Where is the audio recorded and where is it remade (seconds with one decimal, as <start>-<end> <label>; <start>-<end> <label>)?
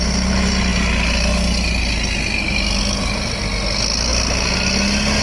0.0-5.2 recorded